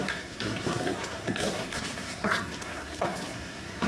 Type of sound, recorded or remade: remade